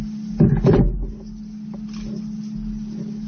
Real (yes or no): yes